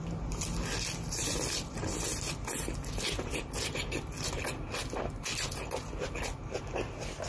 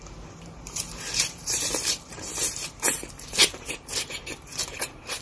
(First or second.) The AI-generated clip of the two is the second